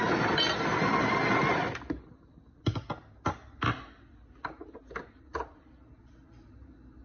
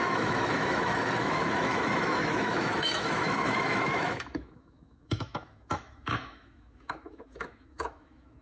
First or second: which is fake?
second